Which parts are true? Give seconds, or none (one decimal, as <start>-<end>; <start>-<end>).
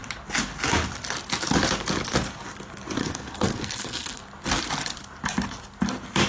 0.0-3.0; 4.2-6.3